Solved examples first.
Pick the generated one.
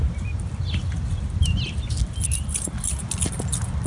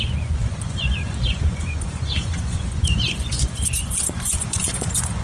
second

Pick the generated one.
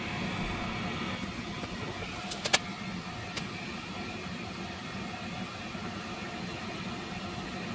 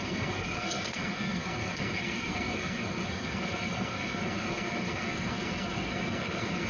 second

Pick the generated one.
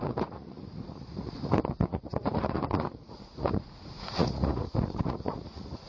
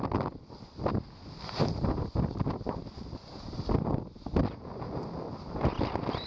first